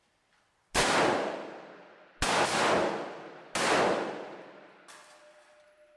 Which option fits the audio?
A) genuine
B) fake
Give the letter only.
A